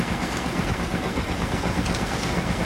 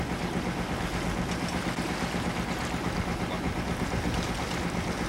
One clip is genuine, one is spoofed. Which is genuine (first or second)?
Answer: second